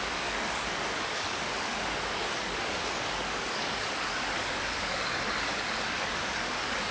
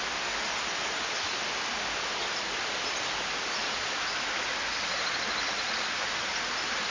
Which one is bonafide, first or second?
second